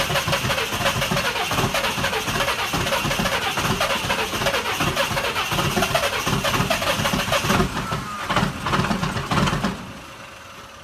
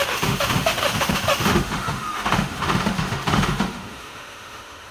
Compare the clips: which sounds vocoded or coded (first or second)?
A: second